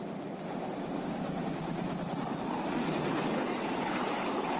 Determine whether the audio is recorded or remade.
remade